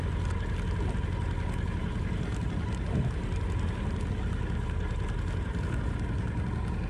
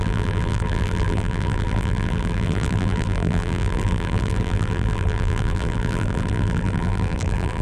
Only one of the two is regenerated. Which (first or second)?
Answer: second